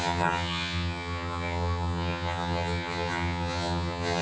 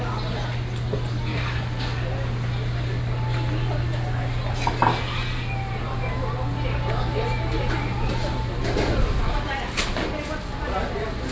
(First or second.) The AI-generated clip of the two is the first